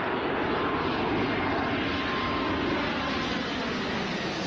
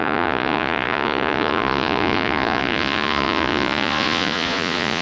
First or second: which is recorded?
first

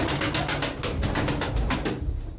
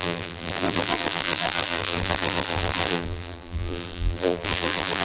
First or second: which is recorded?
first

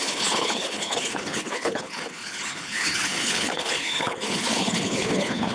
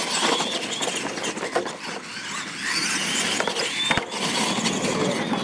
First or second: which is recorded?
second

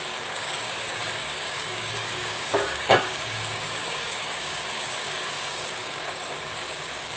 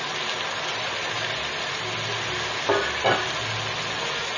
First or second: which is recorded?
second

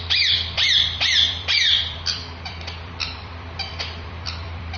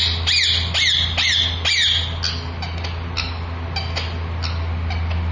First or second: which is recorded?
second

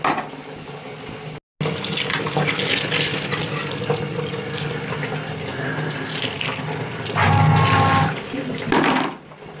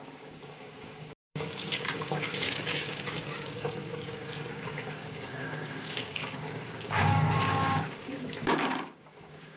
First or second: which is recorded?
first